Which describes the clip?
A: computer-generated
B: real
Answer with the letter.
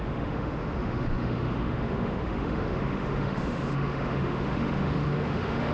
A